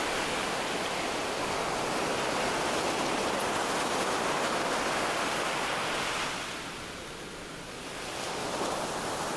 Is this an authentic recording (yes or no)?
yes